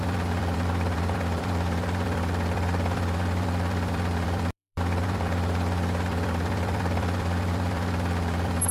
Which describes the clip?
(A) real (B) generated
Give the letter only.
B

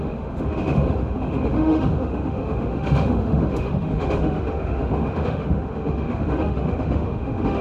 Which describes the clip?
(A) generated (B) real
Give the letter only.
A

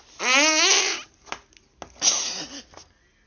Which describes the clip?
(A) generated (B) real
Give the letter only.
B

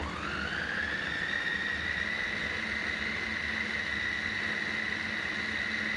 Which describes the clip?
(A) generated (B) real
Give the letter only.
B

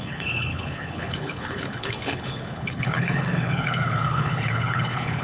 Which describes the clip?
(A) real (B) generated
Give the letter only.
B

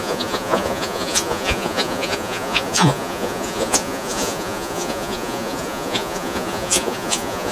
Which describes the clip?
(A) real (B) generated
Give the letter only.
B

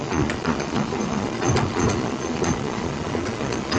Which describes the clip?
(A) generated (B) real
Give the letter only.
A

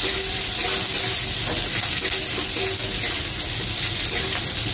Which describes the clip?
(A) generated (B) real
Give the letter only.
B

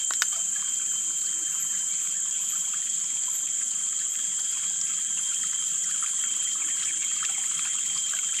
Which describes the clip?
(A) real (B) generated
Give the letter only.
B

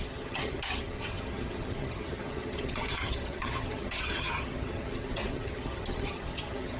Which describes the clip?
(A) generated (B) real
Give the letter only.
A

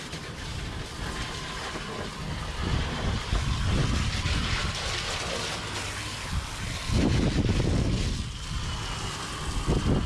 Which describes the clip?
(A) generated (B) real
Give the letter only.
B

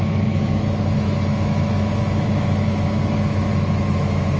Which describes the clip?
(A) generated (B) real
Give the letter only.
A